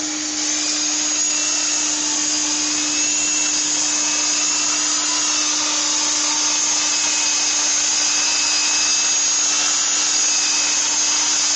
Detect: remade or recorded recorded